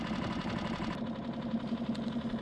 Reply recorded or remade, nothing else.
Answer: recorded